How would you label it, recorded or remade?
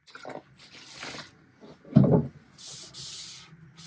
recorded